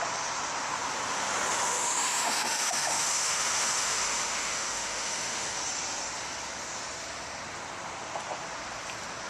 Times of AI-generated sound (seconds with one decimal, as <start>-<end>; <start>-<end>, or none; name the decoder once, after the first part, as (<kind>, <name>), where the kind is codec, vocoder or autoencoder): 1.5-5.6 (autoencoder, DAC-VAE)